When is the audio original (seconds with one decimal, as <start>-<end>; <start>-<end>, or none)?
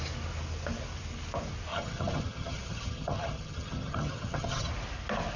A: 0.0-1.7; 4.7-5.4